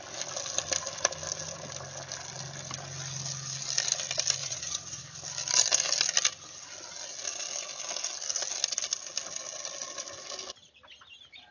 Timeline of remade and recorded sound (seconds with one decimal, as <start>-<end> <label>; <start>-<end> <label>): 0.0-4.4 recorded; 4.4-5.0 remade; 5.0-11.5 recorded